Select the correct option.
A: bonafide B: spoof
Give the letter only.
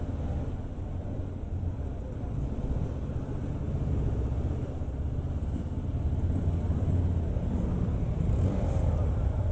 A